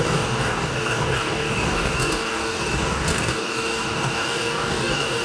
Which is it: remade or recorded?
remade